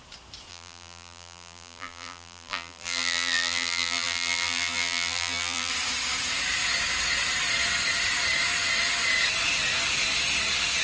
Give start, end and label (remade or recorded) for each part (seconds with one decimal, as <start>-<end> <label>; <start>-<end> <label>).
0.0-0.5 recorded; 0.5-5.7 remade; 5.7-10.8 recorded